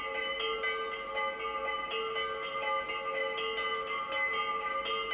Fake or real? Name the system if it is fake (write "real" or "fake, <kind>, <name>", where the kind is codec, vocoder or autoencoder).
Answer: real